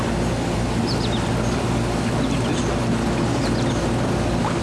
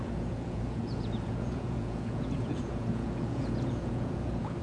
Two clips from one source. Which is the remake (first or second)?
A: second